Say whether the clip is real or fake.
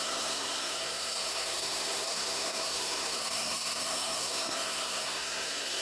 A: fake